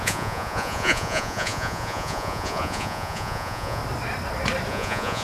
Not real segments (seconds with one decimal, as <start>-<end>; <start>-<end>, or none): 0.0-3.8; 4.7-5.2